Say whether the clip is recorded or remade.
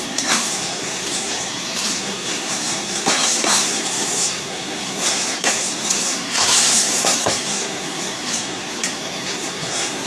remade